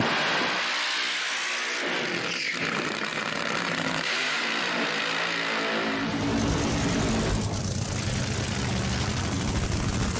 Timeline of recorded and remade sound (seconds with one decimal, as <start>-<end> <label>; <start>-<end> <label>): 0.0-3.1 recorded; 3.1-5.0 remade; 5.0-6.1 recorded; 6.1-7.0 remade; 7.0-10.2 recorded